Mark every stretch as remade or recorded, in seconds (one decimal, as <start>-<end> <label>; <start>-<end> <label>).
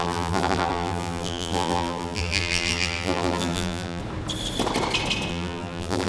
0.0-4.0 remade; 4.0-5.3 recorded; 5.3-6.1 remade